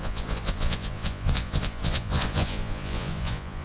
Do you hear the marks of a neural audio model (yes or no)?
yes